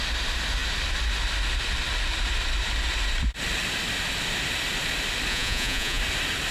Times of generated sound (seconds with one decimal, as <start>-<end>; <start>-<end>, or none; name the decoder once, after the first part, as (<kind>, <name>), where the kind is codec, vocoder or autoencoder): 5.3-6.0 (vocoder, Vocos)